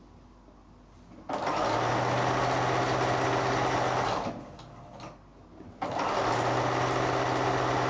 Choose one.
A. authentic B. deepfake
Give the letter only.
A